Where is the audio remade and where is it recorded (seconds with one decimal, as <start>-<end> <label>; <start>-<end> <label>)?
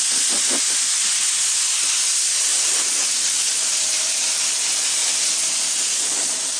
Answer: 0.0-2.5 recorded; 2.5-4.4 remade; 4.4-5.0 recorded; 5.0-5.6 remade; 5.6-6.6 recorded